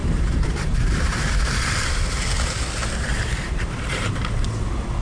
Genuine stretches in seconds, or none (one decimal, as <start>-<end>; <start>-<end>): 2.0-3.1; 4.2-5.0